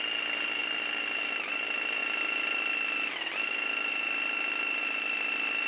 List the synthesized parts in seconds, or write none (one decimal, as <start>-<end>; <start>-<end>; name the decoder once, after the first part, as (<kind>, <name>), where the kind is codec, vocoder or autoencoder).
none